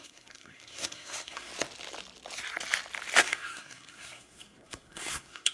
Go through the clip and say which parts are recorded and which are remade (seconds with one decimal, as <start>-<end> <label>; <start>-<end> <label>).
0.0-1.5 remade; 1.5-3.2 recorded; 3.2-5.5 remade